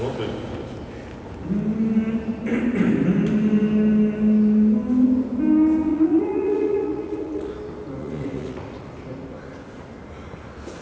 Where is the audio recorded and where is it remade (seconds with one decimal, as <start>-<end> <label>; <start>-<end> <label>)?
0.0-5.9 recorded; 5.9-7.5 remade; 7.5-8.0 recorded; 8.0-8.9 remade; 8.9-10.8 recorded